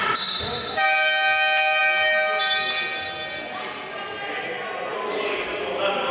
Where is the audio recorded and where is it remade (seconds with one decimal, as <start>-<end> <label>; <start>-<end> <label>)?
0.0-6.1 recorded